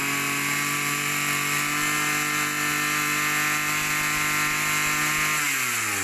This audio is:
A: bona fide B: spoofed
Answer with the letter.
A